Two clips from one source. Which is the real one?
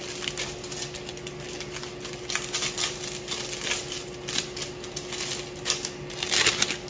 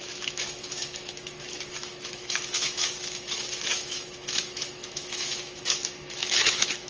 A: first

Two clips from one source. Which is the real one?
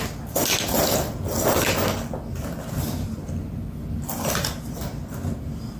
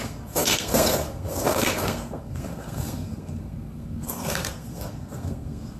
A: first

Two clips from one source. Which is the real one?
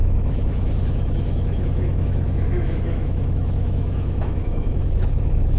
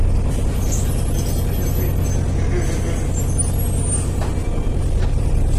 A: second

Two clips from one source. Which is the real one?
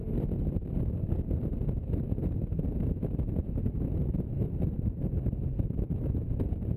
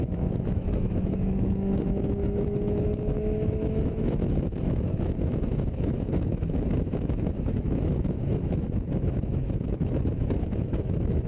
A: first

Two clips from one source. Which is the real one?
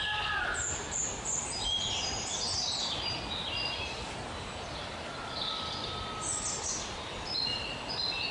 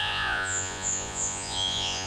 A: first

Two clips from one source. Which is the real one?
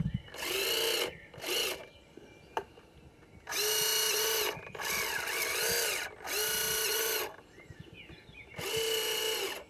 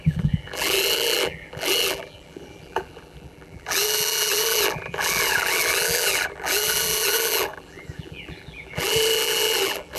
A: first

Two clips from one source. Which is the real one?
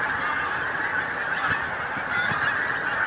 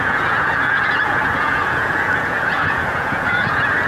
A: first